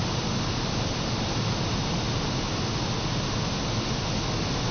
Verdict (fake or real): real